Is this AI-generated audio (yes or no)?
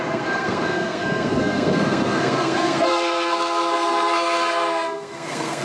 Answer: yes